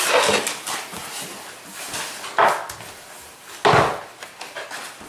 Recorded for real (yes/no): yes